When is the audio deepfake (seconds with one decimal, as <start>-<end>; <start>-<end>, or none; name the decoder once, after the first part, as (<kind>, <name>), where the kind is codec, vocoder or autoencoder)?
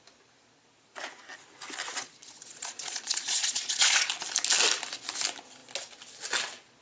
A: 1.9-4.1 (vocoder, Vocos)